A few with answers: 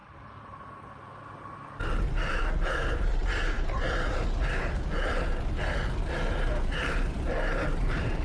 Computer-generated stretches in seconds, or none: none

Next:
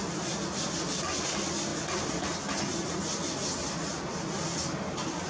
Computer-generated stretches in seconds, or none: none

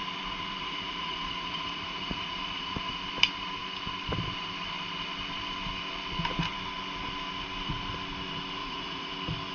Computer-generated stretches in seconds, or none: 0.6-3.0 (vocoder, Vocos); 8.6-9.1

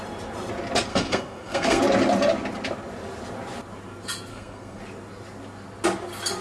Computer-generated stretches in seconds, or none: 0.9-1.8 (codec, SNAC); 4.3-4.8

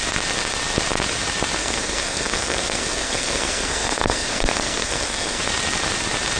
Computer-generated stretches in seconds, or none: 1.6-5.4 (codec, SNAC)

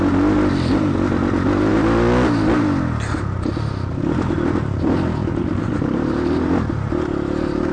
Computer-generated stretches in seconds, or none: 5.2-6.5 (vocoder, BigVGAN v2)

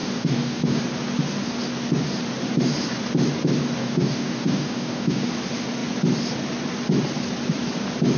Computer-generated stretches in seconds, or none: 0.0-0.8 (codec, DAC); 3.8-5.3

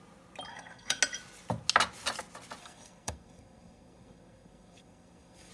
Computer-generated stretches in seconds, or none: 0.5-1.0 (codec, SNAC); 2.6-5.5